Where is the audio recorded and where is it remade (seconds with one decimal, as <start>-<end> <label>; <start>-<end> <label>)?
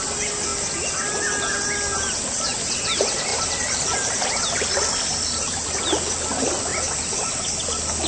0.0-1.9 recorded; 1.9-2.8 remade; 2.8-3.3 recorded; 3.3-6.0 remade; 6.0-8.1 recorded